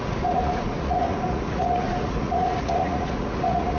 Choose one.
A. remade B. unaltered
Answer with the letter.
A